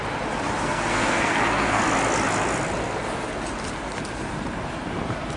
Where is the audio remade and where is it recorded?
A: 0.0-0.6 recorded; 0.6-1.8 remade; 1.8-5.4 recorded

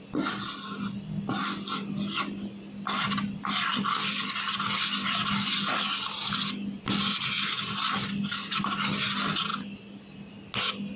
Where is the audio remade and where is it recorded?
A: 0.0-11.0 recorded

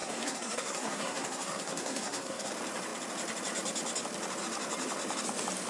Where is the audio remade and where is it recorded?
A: 0.0-2.5 remade; 2.5-5.7 recorded